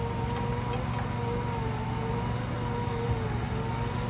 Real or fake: real